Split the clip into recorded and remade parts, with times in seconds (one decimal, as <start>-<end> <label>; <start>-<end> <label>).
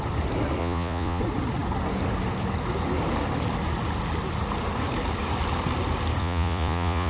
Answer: 0.0-0.6 recorded; 0.6-1.2 remade; 1.2-6.2 recorded; 6.2-7.1 remade